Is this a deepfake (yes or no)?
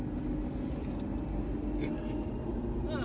no